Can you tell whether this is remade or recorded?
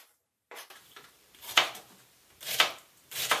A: remade